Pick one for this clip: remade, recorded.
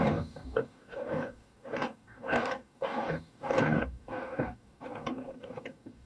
remade